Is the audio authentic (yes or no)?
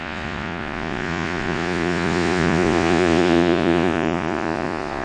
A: no